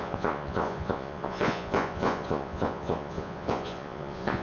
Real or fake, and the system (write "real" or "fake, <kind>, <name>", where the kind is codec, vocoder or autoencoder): fake, vocoder, Vocos